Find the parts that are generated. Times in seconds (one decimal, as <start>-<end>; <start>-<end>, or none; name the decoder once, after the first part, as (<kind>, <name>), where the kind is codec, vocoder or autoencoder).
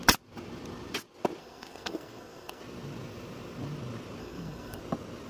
1.4-2.6 (codec, SNAC); 4.2-4.8